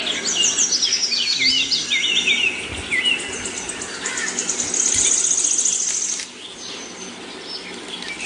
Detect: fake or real real